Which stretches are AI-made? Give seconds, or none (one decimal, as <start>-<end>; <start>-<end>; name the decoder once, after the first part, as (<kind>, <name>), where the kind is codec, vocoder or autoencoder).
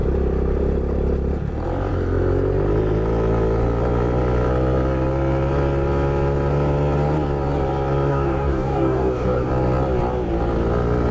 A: 8.1-9.5 (codec, DAC)